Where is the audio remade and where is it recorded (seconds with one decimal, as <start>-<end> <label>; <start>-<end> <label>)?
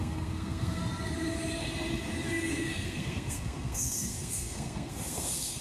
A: 0.0-0.8 remade; 0.8-2.3 recorded; 2.3-5.6 remade